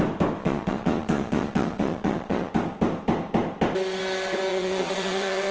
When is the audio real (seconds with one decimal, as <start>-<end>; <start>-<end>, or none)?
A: 0.0-0.4; 2.5-4.5